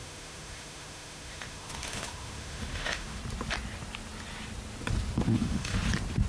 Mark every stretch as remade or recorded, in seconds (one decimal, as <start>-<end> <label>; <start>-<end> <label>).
0.0-3.2 remade; 3.2-5.3 recorded; 5.3-5.8 remade; 5.8-6.3 recorded